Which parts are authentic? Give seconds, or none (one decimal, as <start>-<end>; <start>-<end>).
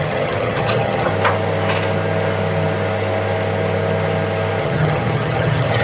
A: 1.1-4.6